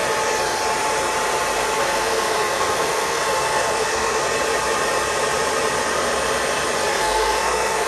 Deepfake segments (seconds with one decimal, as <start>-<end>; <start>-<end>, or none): 1.8-4.2; 6.9-7.9